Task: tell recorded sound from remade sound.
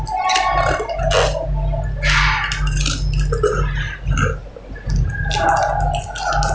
recorded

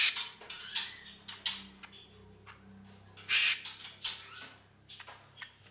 recorded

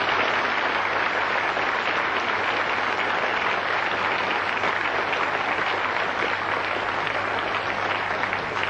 recorded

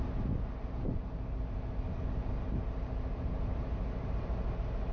recorded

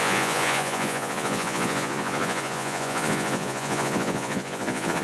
remade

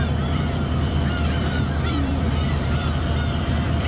remade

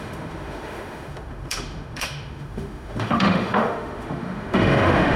remade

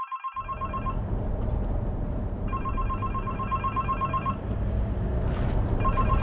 remade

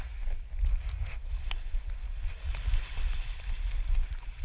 recorded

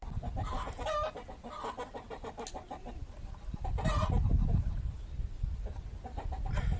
recorded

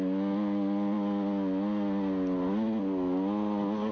recorded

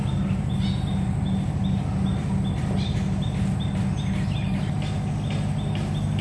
recorded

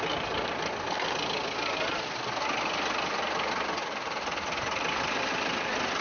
recorded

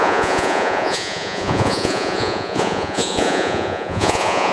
remade